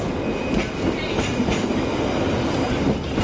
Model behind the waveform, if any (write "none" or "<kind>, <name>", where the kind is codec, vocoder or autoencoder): none